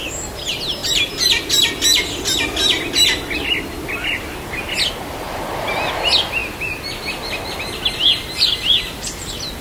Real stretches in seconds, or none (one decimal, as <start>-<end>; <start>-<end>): 0.0-8.2